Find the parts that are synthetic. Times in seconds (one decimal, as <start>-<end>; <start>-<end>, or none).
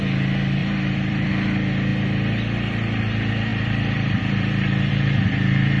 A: 0.6-1.3; 3.5-4.9